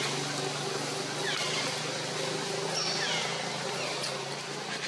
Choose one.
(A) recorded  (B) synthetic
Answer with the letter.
A